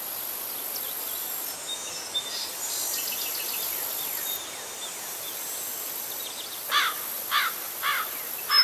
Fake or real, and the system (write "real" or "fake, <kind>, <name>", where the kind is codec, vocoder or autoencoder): real